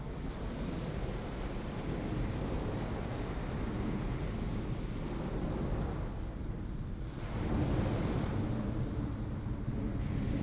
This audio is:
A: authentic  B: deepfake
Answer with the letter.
A